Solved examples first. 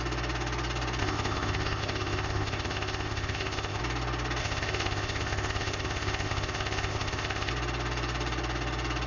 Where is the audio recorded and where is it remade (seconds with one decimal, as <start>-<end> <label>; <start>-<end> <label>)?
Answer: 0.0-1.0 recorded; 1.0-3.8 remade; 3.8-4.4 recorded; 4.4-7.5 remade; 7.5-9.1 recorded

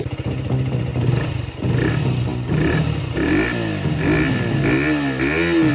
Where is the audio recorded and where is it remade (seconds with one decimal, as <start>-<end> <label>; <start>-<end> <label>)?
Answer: 0.0-5.7 recorded

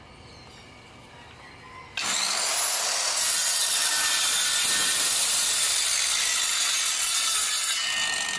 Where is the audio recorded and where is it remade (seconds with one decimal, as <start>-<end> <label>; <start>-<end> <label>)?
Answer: 0.0-3.3 recorded; 3.3-3.9 remade; 3.9-8.4 recorded

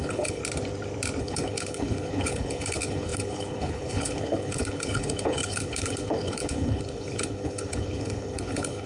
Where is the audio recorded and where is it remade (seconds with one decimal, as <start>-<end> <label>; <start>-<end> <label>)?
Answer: 0.0-0.4 remade; 0.4-1.2 recorded; 1.2-8.9 remade

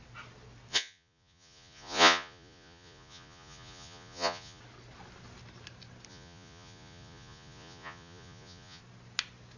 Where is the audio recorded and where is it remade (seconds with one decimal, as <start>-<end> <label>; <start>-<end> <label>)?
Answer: 0.0-0.7 recorded; 0.7-4.6 remade; 4.6-6.1 recorded; 6.1-8.8 remade; 8.8-9.6 recorded

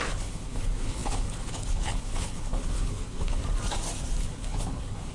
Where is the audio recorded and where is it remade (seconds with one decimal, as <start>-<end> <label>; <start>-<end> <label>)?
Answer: 0.0-3.4 remade; 3.4-4.2 recorded; 4.2-5.1 remade

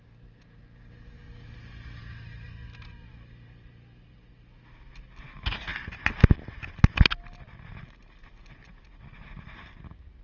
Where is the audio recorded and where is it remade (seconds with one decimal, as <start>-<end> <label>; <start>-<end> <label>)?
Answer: 0.0-10.2 recorded